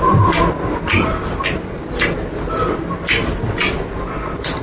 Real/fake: real